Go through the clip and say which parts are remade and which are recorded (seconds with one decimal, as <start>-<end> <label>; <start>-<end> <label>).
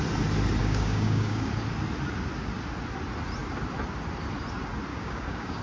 0.0-0.6 recorded; 0.6-1.5 remade; 1.5-4.9 recorded; 4.9-5.6 remade